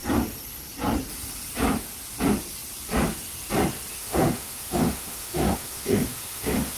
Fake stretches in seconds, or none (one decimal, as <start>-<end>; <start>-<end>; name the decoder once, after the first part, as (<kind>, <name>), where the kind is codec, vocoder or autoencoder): 3.9-6.8 (autoencoder, DAC-VAE)